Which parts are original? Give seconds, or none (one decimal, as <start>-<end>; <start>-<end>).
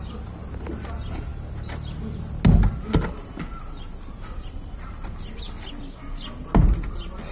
0.0-7.3